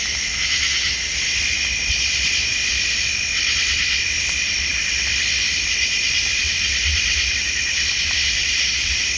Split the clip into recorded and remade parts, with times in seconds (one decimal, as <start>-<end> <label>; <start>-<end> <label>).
0.0-2.5 recorded; 2.5-4.7 remade; 4.7-5.6 recorded; 5.6-6.4 remade; 6.4-7.4 recorded; 7.4-9.2 remade